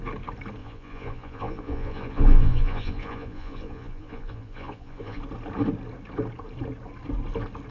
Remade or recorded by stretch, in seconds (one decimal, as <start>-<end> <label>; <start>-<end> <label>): 0.0-0.6 recorded; 0.6-5.2 remade; 5.2-7.7 recorded